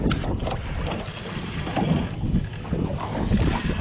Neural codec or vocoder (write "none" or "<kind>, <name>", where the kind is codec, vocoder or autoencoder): none